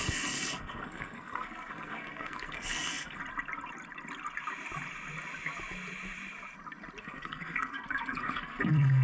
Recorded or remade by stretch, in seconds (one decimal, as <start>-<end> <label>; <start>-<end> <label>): 0.0-3.2 remade; 3.2-7.0 recorded; 7.0-9.0 remade